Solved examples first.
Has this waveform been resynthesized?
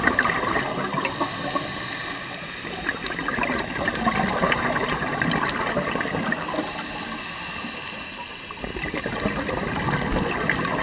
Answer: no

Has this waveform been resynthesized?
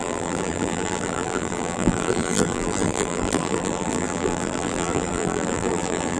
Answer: yes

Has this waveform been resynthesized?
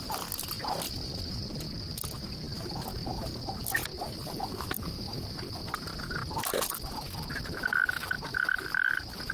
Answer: no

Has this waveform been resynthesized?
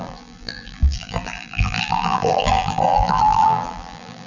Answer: yes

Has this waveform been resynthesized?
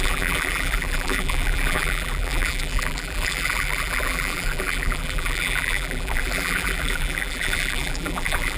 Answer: yes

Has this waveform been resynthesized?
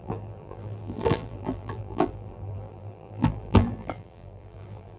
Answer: yes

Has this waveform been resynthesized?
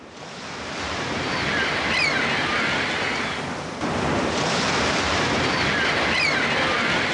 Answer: no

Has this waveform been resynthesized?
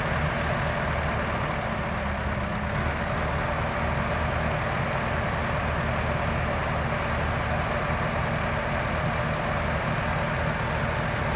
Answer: no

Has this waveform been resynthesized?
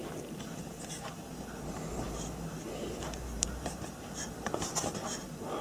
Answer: yes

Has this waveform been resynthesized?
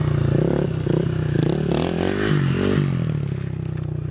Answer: no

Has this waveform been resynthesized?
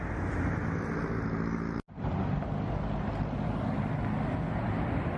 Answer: no